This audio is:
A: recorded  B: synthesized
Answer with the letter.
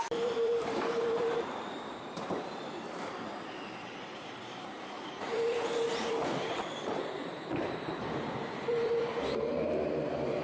B